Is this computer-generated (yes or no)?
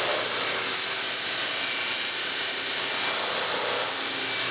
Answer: no